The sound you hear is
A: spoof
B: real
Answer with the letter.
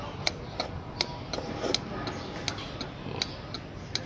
B